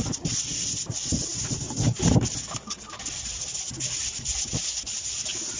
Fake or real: real